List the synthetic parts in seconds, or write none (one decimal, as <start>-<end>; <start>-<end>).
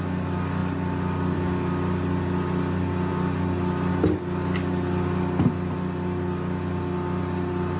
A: none